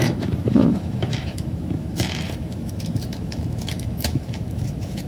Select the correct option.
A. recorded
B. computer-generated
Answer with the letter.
B